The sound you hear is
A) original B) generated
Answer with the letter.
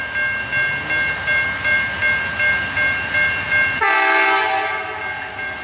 A